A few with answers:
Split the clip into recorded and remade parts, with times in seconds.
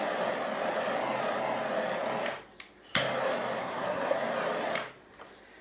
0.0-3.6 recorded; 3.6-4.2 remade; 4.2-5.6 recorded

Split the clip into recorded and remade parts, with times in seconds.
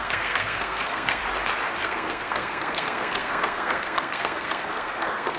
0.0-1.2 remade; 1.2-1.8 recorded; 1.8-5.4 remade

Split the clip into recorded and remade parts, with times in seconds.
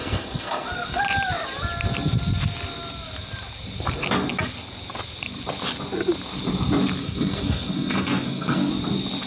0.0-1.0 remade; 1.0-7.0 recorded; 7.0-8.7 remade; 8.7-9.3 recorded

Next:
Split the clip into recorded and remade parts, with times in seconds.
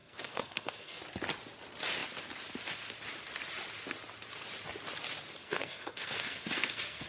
0.0-1.0 remade; 1.0-5.4 recorded; 5.4-7.1 remade